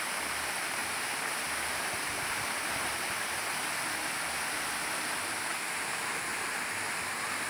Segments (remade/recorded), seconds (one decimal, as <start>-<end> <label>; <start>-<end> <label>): 0.0-0.8 remade; 0.8-1.7 recorded; 1.7-3.4 remade; 3.4-4.0 recorded; 4.0-6.3 remade; 6.3-6.9 recorded; 6.9-7.5 remade